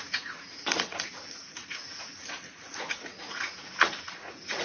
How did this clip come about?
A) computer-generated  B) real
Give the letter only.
A